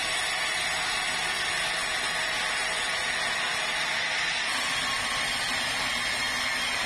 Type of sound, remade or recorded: recorded